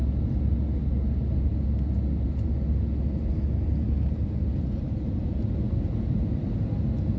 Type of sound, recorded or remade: recorded